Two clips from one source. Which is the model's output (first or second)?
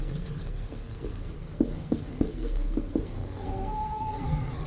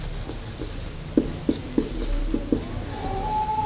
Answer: first